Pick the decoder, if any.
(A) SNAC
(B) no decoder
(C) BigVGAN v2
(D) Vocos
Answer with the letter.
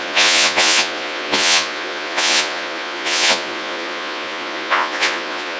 D